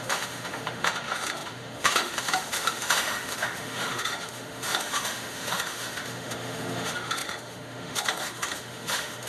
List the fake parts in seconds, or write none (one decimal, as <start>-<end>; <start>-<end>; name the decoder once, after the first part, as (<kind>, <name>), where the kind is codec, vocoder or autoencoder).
0.0-9.3 (autoencoder, DAC-VAE)